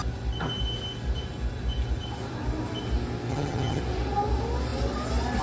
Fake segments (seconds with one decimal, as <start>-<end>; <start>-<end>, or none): 3.3-3.8